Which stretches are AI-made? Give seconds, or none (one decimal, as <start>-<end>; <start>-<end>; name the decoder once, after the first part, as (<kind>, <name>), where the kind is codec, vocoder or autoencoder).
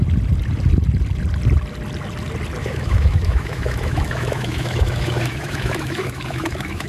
2.6-6.9 (autoencoder, DAC-VAE)